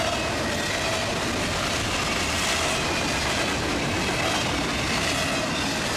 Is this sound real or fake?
real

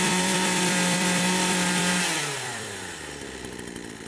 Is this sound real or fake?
fake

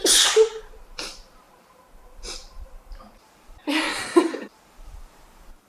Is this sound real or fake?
fake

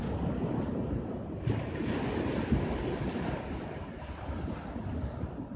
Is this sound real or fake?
real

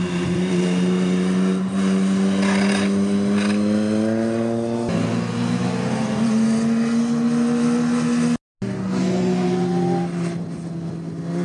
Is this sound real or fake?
real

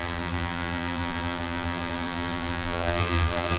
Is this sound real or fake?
fake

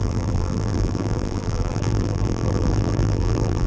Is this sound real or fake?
fake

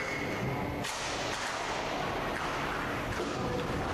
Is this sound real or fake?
real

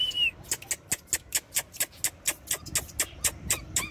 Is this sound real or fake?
real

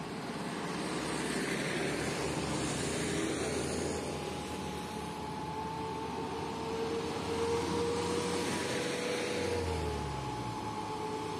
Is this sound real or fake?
real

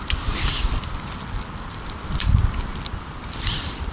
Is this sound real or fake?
fake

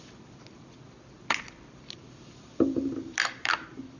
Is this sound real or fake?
fake